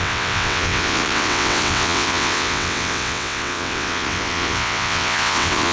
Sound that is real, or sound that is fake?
fake